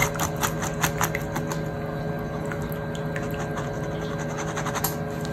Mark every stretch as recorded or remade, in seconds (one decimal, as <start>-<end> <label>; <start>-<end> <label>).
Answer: 0.0-5.3 recorded

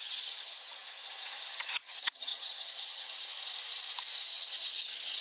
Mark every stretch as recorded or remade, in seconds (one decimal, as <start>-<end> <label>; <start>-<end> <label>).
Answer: 0.0-3.3 remade; 3.3-4.2 recorded; 4.2-5.2 remade

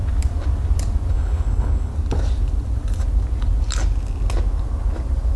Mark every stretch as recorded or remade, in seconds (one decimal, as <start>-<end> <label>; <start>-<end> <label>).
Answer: 0.0-1.1 recorded; 1.1-1.9 remade; 1.9-5.4 recorded

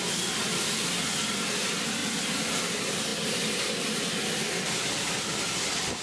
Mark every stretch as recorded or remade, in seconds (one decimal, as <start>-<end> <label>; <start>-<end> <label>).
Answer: 0.0-6.0 recorded

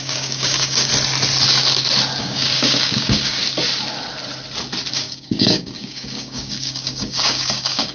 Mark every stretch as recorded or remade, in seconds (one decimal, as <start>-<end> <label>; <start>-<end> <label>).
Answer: 0.0-0.9 remade; 0.9-2.2 recorded; 2.2-3.4 remade; 3.4-4.9 recorded; 4.9-7.9 remade

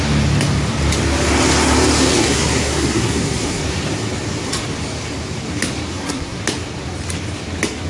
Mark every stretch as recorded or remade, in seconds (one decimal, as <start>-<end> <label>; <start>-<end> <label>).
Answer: 0.0-2.2 recorded; 2.2-3.6 remade; 3.6-5.9 recorded; 5.9-6.4 remade; 6.4-7.9 recorded

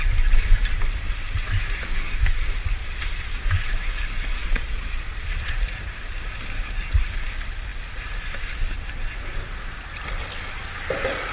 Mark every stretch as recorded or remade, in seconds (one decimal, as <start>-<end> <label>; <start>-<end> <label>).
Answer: 0.0-2.8 recorded; 2.8-3.4 remade; 3.4-4.4 recorded; 4.4-5.7 remade; 5.7-11.3 recorded